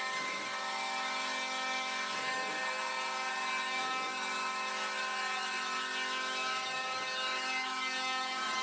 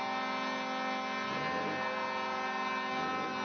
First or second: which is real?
second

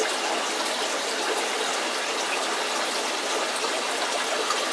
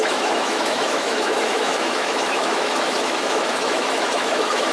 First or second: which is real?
first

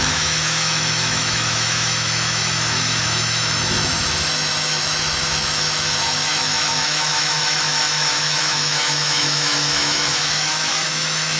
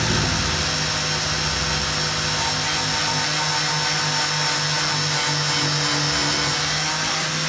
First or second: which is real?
second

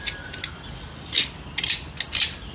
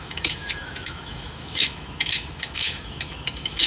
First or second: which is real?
first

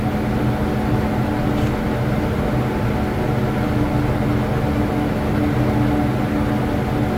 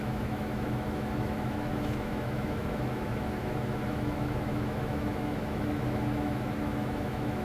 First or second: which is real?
first